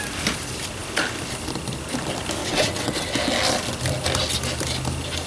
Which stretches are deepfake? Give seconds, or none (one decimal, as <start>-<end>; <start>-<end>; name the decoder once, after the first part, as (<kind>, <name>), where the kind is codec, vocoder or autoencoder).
2.4-3.1 (vocoder, WaveNeXt)